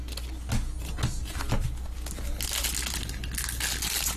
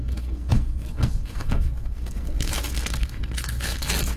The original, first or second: first